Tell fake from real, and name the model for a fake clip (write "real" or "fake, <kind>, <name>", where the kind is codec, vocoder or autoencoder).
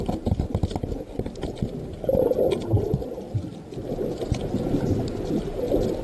real